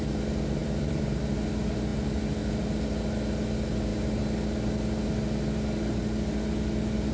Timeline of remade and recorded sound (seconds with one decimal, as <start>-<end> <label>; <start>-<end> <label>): 0.0-0.6 recorded; 0.6-1.2 remade; 1.2-7.1 recorded